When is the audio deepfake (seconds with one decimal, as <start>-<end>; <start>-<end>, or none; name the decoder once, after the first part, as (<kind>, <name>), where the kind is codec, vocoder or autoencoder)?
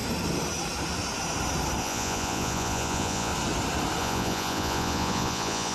1.8-3.3 (vocoder, Vocos); 4.0-5.7